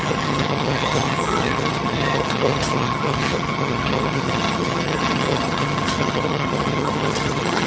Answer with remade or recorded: remade